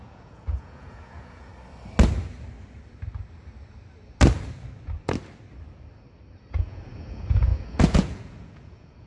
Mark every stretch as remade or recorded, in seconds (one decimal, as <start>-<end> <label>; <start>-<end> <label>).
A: 0.0-1.5 remade; 1.5-6.6 recorded; 6.6-9.1 remade